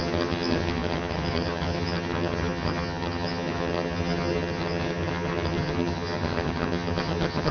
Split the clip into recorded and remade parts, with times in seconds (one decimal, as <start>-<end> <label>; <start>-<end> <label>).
0.0-7.5 remade